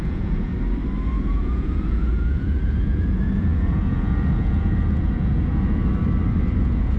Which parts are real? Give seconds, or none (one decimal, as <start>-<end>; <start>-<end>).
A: 0.5-1.2; 5.8-6.6

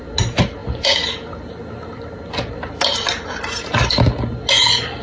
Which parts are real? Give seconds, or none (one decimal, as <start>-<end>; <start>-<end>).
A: 0.0-5.0

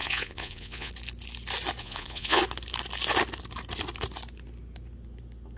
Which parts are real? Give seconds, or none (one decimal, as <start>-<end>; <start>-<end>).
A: 0.9-1.8; 2.4-5.6

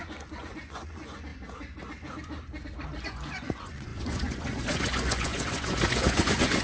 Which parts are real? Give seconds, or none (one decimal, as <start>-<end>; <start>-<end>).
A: 1.3-2.9